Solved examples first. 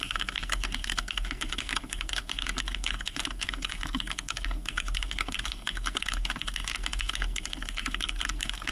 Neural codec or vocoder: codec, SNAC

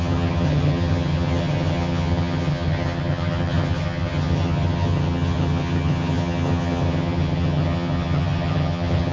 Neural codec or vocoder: vocoder, HiFi-GAN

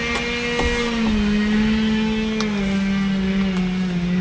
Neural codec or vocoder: none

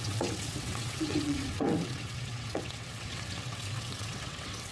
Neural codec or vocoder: vocoder, WaveNeXt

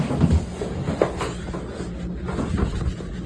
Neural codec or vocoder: none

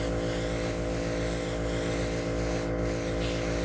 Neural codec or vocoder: none